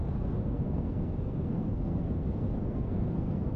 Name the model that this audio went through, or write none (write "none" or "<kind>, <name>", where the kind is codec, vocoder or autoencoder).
codec, SNAC